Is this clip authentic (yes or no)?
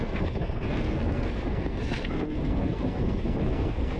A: no